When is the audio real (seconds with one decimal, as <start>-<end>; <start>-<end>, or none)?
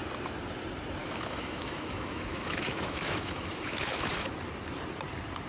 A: 0.0-1.0; 4.3-5.5